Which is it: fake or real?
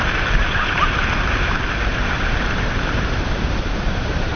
fake